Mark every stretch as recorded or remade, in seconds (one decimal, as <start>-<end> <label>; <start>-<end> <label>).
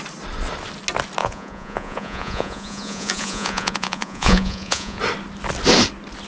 0.0-1.2 recorded; 1.2-5.0 remade; 5.0-6.3 recorded